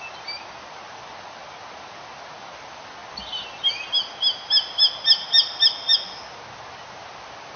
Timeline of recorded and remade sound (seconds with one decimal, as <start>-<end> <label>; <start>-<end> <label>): 0.0-7.6 recorded